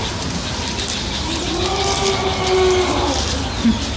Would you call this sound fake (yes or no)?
no